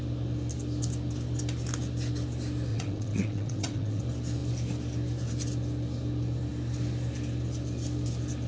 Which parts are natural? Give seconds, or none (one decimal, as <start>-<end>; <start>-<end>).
0.0-2.7; 4.0-8.5